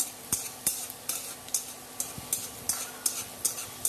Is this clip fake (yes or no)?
no